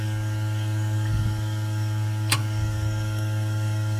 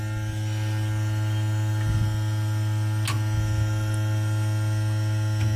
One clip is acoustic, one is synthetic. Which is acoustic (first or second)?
second